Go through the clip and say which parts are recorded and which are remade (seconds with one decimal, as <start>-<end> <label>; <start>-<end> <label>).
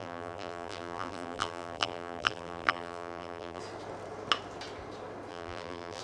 0.0-3.6 remade; 3.6-5.3 recorded; 5.3-6.0 remade